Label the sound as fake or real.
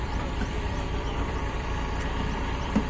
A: fake